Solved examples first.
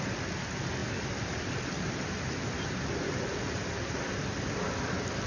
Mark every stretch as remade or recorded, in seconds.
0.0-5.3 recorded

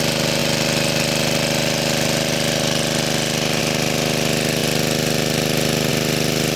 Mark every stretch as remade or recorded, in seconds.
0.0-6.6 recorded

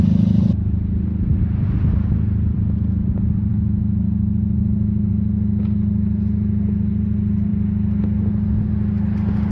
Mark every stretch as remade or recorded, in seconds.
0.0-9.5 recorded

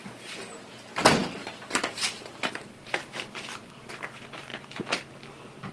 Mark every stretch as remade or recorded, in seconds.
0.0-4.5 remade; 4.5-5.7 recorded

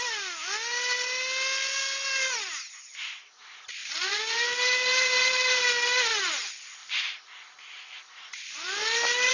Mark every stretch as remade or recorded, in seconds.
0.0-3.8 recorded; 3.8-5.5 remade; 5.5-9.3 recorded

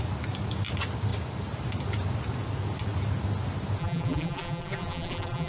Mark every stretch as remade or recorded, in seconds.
0.0-3.8 recorded; 3.8-5.5 remade

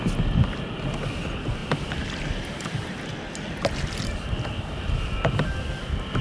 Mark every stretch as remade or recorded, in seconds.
0.0-6.2 recorded